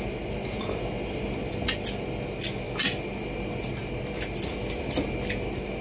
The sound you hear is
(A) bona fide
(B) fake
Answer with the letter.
A